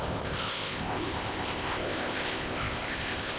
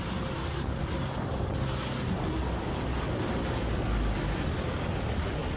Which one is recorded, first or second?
second